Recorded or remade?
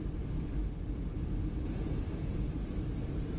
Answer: recorded